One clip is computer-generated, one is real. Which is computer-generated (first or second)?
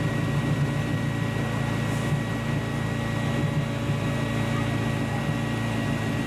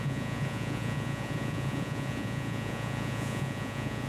second